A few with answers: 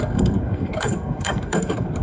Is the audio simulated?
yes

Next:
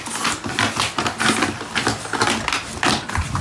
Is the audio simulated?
no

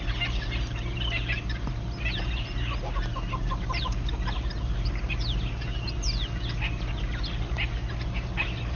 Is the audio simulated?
no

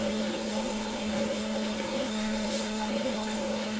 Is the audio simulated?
yes